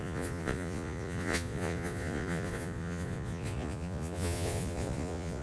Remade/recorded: remade